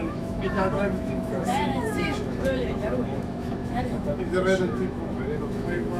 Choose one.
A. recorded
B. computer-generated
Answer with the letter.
B